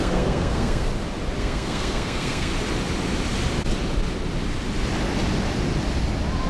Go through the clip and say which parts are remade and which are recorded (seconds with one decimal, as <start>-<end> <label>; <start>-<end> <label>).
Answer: 0.0-0.9 remade; 0.9-1.4 recorded; 1.4-2.5 remade; 2.5-6.5 recorded